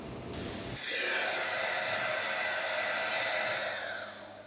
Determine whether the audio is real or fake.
real